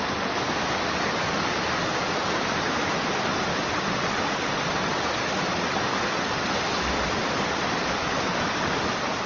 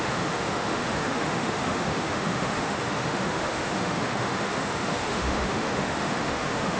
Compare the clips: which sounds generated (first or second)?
second